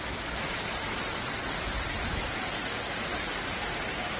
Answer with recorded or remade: recorded